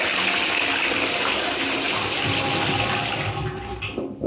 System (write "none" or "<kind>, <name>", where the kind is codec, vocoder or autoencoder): none